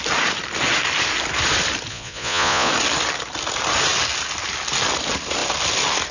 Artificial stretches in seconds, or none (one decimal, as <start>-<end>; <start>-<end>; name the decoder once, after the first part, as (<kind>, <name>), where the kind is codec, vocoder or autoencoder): 1.9-2.7 (vocoder, Vocos)